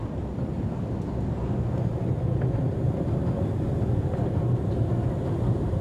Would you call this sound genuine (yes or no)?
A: yes